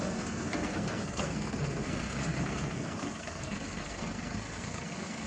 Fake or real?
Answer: fake